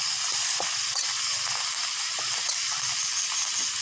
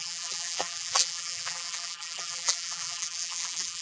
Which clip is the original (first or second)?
first